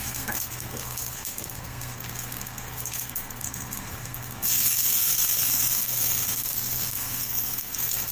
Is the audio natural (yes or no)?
no